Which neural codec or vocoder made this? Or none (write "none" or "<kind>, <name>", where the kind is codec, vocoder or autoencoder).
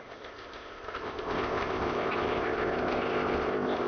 codec, ZipCodec